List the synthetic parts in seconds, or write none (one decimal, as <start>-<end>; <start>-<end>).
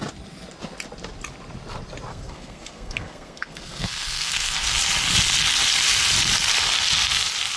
2.1-4.7